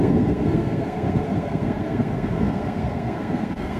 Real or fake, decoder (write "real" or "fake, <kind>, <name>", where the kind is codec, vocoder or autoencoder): fake, codec, SNAC